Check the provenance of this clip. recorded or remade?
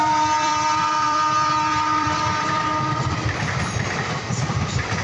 remade